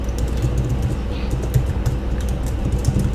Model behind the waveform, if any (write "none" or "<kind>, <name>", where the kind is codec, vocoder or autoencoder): none